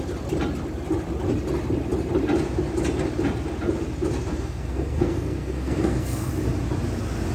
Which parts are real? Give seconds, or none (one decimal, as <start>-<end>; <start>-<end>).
0.0-4.3; 6.3-7.3